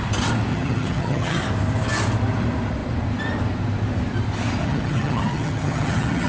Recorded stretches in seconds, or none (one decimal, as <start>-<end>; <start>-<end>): 0.0-0.5; 1.4-4.6